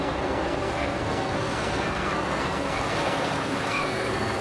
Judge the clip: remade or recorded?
remade